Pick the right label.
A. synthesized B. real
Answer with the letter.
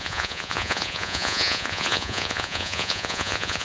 A